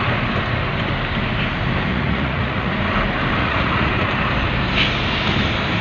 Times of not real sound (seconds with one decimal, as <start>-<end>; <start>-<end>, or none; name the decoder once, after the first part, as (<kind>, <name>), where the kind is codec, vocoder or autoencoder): 1.9-2.7 (vocoder, Vocos); 3.4-3.9